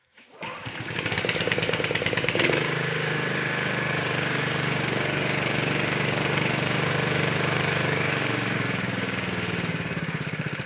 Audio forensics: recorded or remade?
remade